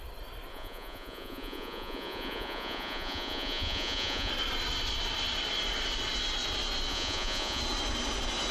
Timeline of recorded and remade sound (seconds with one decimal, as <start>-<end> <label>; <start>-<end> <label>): 0.0-0.5 recorded; 0.5-4.3 remade; 4.3-6.9 recorded; 6.9-7.6 remade; 7.6-8.5 recorded